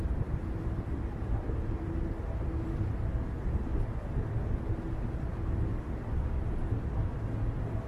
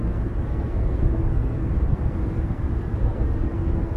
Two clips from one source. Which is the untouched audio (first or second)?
first